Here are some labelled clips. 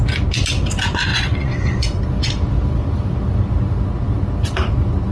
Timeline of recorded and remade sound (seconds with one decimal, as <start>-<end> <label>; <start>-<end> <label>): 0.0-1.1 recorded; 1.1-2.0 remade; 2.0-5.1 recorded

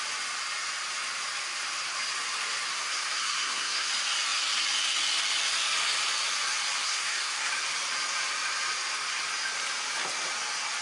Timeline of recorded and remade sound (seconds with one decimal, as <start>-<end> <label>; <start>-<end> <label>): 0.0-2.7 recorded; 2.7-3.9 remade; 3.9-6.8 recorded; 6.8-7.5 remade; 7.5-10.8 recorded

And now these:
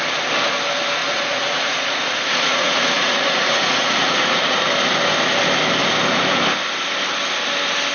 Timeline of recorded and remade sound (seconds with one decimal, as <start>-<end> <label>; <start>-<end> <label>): 0.0-1.0 recorded; 1.0-4.7 remade; 4.7-7.9 recorded